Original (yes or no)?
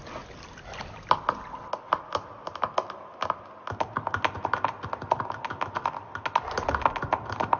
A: yes